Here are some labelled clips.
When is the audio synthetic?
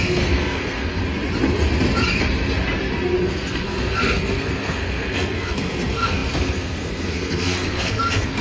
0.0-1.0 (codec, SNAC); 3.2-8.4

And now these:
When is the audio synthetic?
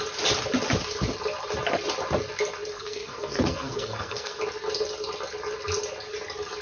2.7-4.4 (codec, SNAC)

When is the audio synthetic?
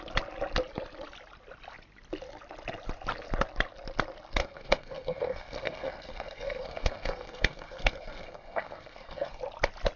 4.4-9.4 (codec, SNAC)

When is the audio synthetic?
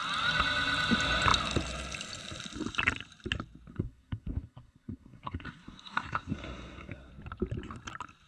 3.7-7.1 (codec, SNAC)